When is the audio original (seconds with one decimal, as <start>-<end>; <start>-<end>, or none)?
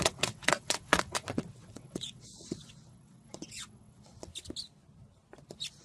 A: 4.3-5.8